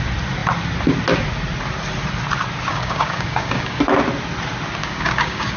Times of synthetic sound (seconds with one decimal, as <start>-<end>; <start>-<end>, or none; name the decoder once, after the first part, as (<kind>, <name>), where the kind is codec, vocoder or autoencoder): 2.7-3.8 (codec, DAC); 4.8-5.6